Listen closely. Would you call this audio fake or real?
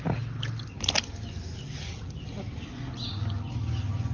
real